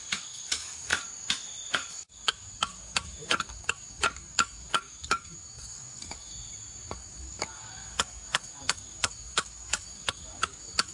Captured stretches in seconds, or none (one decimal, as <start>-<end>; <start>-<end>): 0.9-1.9; 6.3-6.9